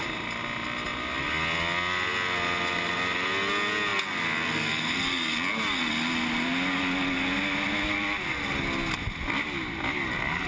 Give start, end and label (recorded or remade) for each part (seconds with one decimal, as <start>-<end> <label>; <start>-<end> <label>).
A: 0.0-10.5 recorded